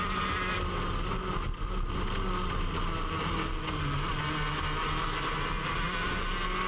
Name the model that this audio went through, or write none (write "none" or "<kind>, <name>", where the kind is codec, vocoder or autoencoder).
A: none